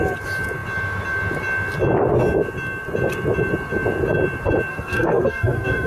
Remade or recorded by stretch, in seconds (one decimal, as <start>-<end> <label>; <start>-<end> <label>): 0.0-4.7 recorded; 4.7-5.9 remade